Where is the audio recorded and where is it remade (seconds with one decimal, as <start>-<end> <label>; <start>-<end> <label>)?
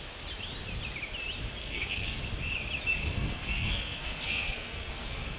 0.0-1.6 recorded; 1.6-2.2 remade; 2.2-3.0 recorded; 3.0-5.4 remade